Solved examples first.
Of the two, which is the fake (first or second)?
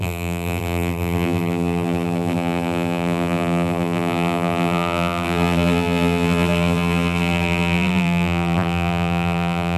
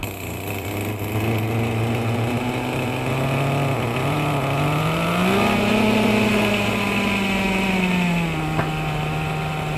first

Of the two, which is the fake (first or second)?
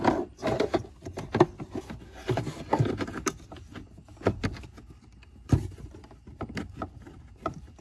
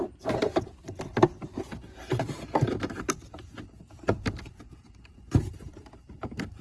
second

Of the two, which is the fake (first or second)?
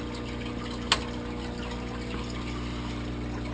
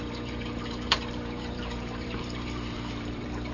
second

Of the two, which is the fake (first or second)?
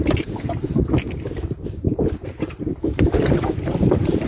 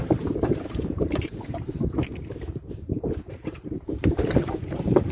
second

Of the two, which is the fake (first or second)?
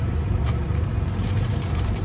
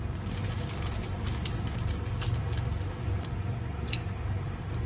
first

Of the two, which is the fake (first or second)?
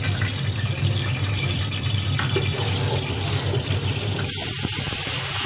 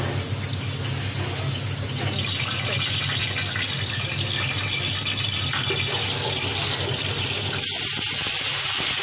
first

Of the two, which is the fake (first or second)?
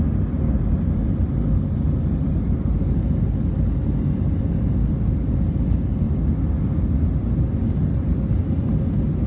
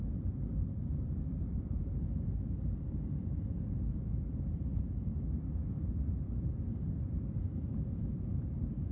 second